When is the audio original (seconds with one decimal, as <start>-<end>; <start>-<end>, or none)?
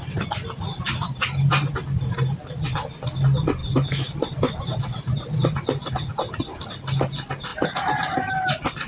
0.0-8.9